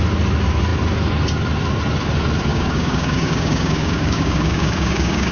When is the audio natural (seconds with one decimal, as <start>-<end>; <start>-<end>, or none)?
0.0-2.5